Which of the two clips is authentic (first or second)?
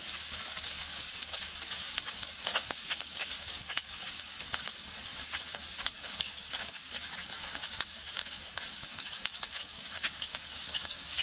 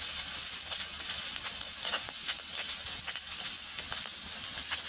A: second